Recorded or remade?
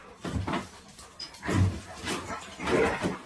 remade